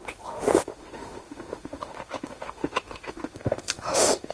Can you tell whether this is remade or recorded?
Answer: remade